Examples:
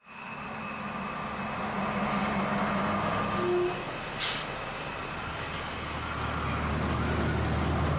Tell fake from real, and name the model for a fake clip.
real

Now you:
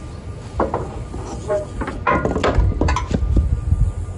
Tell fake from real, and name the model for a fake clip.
real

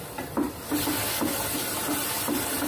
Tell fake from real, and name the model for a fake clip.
real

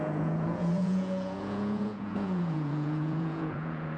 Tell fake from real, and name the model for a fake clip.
fake, vocoder, Vocos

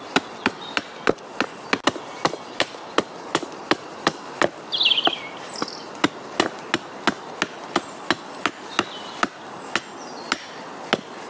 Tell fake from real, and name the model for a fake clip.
real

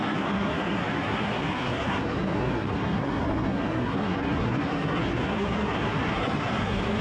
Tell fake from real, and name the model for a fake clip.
fake, codec, SNAC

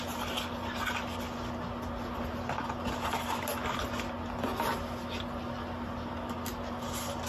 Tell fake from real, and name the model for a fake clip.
real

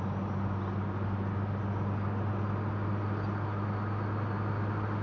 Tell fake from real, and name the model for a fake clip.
real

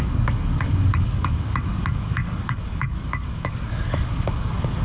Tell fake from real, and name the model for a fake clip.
fake, codec, DAC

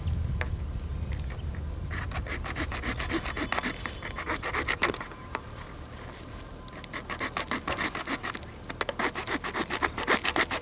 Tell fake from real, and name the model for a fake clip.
real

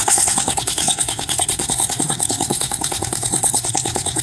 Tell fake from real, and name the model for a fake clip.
fake, codec, SNAC